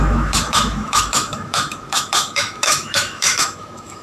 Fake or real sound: fake